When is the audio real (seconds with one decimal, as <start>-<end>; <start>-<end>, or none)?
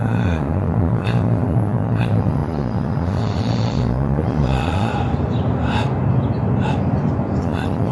4.9-7.4